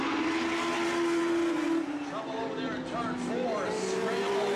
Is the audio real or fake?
real